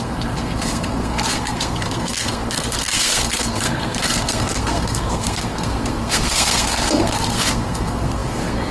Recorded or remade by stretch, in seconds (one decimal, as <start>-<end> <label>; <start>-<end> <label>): 0.0-8.7 remade